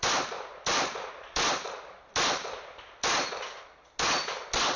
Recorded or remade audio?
recorded